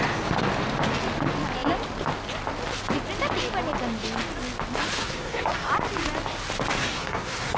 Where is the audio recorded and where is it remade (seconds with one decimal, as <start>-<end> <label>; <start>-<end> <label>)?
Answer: 0.0-5.0 recorded; 5.0-5.7 remade; 5.7-6.8 recorded; 6.8-7.6 remade

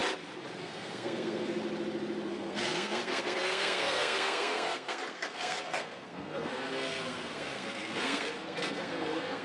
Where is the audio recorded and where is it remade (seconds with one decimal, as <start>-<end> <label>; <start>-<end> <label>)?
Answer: 0.0-0.6 recorded; 0.6-1.6 remade; 1.6-2.3 recorded; 2.3-9.4 remade

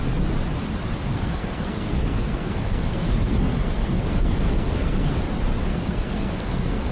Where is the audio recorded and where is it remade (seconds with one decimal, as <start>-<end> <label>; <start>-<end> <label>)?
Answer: 0.0-1.1 recorded; 1.1-5.2 remade; 5.2-5.7 recorded; 5.7-6.9 remade

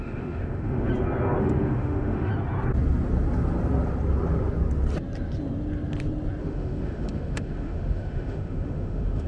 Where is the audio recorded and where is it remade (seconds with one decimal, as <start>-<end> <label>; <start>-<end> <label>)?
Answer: 0.0-0.9 remade; 0.9-1.4 recorded; 1.4-2.3 remade; 2.3-6.4 recorded; 6.4-9.3 remade

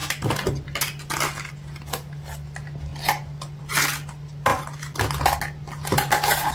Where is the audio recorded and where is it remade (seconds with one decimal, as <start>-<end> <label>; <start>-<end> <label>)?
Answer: 0.0-6.5 recorded

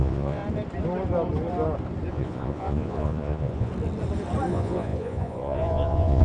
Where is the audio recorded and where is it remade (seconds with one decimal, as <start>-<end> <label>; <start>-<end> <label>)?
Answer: 0.0-0.4 remade; 0.4-2.1 recorded; 2.1-3.7 remade; 3.7-4.5 recorded; 4.5-6.2 remade

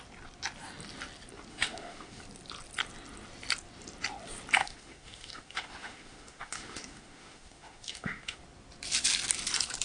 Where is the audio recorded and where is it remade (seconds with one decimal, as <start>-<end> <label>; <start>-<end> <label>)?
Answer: 0.0-1.5 recorded; 1.5-2.2 remade; 2.2-4.6 recorded; 4.6-8.4 remade; 8.4-9.8 recorded

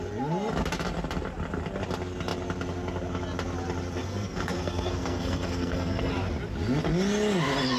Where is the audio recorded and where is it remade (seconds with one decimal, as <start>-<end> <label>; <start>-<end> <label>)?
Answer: 0.0-4.0 recorded; 4.0-6.1 remade; 6.1-7.8 recorded